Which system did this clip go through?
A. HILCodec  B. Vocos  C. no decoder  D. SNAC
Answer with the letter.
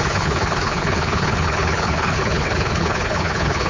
A